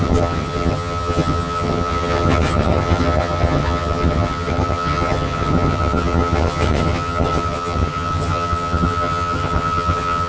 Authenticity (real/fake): fake